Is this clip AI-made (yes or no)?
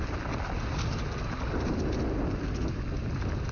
no